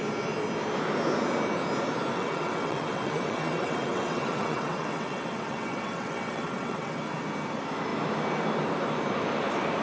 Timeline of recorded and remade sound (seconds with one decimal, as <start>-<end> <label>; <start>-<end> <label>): 0.0-2.1 recorded; 2.1-7.0 remade; 7.0-9.8 recorded